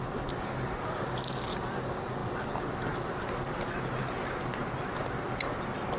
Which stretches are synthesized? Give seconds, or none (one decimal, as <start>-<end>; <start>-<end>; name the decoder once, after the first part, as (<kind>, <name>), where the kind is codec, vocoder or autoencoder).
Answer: 2.2-3.2 (vocoder, BigVGAN v2)